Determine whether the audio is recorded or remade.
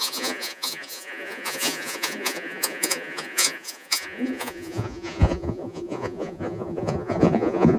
remade